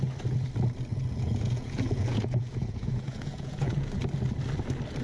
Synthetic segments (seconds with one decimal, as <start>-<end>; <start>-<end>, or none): 0.9-3.9